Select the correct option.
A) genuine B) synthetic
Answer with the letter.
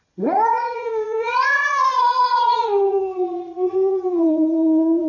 B